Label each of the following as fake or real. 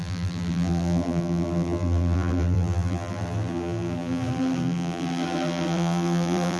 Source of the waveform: fake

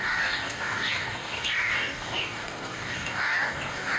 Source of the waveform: fake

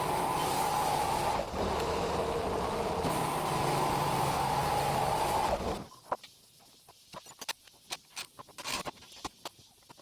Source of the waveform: real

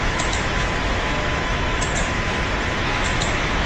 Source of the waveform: fake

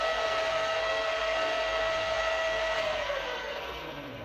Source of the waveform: fake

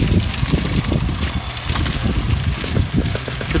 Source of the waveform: real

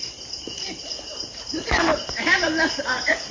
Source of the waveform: fake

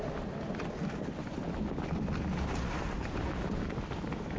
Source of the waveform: real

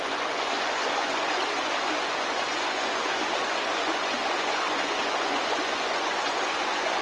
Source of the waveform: fake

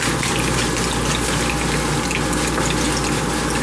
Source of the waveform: real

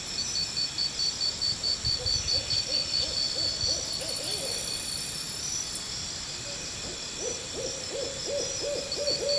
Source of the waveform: real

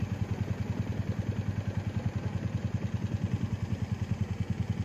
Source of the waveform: real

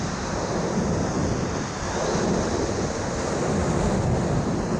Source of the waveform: real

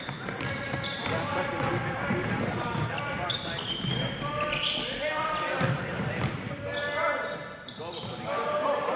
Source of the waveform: fake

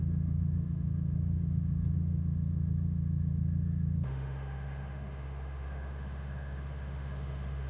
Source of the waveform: fake